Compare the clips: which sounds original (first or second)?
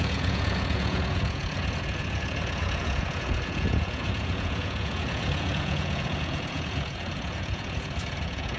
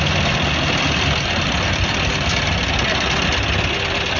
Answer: second